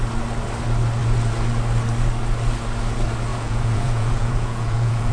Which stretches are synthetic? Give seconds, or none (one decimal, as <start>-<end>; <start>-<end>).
3.3-5.1